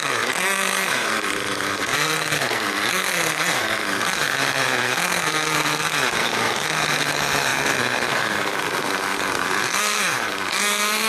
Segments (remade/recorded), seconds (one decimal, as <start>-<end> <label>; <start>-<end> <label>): 0.0-11.1 remade